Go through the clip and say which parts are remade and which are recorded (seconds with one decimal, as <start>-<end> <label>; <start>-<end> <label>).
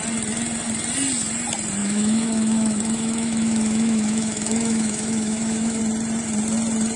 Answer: 0.0-1.8 recorded; 1.8-5.8 remade; 5.8-7.0 recorded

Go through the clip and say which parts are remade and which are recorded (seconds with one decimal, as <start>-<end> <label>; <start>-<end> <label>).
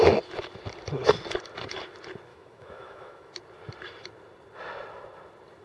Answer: 0.0-2.3 recorded; 2.3-3.3 remade; 3.3-5.6 recorded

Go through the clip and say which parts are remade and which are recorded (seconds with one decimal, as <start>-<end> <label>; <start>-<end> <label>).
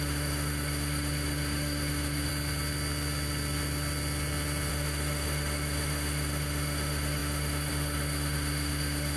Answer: 0.0-2.3 remade; 2.3-4.7 recorded; 4.7-9.2 remade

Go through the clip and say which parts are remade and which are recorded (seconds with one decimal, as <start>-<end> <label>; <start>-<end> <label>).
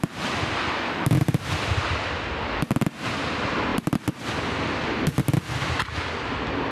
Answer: 0.0-6.7 recorded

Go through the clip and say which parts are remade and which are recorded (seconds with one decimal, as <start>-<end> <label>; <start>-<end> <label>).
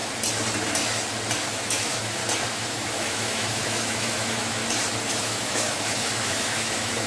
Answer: 0.0-1.5 recorded; 1.5-2.2 remade; 2.2-2.7 recorded; 2.7-4.6 remade; 4.6-5.1 recorded; 5.1-7.1 remade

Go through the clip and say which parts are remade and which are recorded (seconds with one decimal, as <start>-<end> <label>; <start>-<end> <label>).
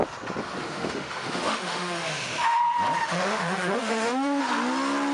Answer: 0.0-0.6 recorded; 0.6-2.6 remade; 2.6-3.0 recorded; 3.0-4.4 remade; 4.4-5.1 recorded